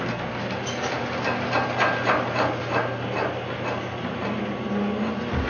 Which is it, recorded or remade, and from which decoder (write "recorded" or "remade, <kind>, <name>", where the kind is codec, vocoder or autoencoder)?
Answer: recorded